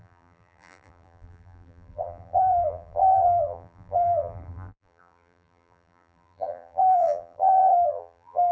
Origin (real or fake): fake